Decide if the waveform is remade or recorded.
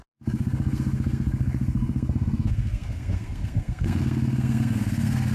remade